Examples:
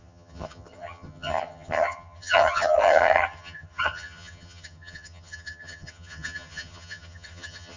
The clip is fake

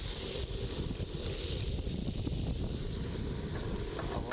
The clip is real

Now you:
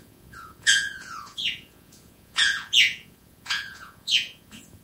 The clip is fake